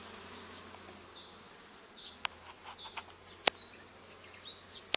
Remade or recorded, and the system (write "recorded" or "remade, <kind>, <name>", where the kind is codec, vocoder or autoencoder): recorded